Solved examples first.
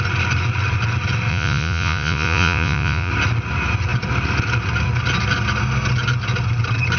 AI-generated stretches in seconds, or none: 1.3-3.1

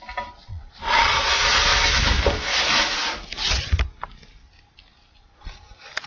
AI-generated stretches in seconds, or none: 0.4-1.2